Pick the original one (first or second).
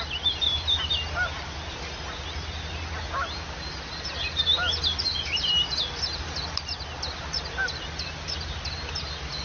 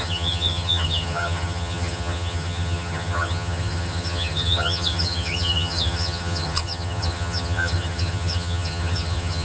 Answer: first